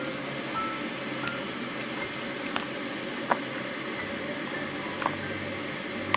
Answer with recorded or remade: recorded